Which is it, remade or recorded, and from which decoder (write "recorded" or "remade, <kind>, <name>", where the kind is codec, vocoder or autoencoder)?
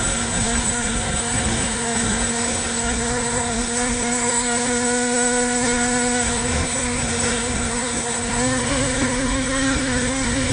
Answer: remade, codec, SNAC